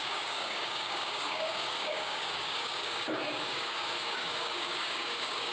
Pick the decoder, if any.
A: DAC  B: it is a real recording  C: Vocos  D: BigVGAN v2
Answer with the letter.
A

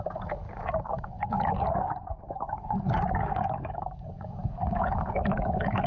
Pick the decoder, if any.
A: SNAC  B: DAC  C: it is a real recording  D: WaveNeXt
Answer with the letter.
B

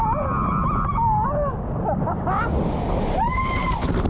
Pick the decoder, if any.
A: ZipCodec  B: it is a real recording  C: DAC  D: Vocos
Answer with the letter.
B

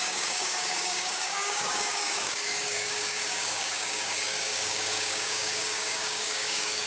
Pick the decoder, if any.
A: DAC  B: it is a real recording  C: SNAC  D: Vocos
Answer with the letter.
A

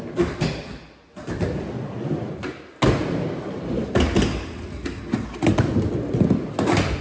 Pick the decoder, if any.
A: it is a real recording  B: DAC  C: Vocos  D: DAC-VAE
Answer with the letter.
A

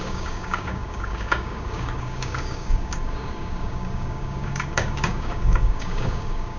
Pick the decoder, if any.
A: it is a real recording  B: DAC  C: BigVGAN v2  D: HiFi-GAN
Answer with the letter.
B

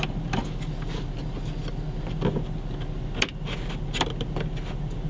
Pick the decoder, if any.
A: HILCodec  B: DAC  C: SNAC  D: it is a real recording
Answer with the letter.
D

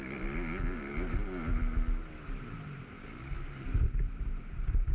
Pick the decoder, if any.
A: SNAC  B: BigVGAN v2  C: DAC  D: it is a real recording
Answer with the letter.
D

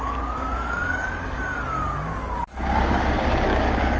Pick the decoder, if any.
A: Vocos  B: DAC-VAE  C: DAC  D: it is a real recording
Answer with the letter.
C